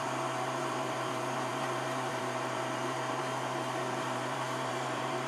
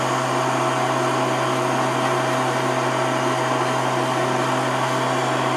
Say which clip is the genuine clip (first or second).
second